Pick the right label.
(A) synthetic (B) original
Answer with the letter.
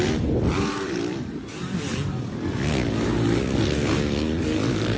B